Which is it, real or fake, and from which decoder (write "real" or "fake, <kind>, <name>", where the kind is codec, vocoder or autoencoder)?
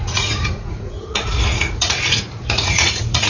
fake, vocoder, Vocos